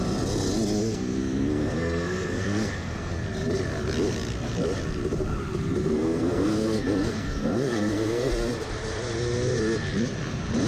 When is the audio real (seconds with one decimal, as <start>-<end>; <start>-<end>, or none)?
0.0-0.8; 3.1-5.8; 8.3-10.7